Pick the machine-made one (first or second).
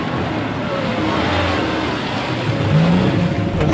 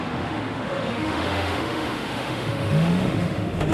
second